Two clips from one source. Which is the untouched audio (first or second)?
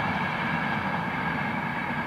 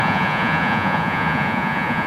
first